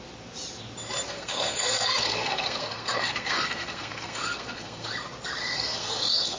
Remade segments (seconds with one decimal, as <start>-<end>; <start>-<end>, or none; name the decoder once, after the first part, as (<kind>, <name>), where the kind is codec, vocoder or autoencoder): 1.1-4.9 (codec, SNAC); 5.4-6.4